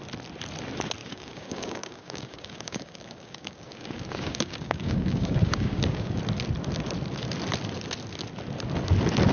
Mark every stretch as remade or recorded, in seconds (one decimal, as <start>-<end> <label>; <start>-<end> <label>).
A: 0.0-1.0 recorded; 1.0-6.2 remade; 6.2-9.3 recorded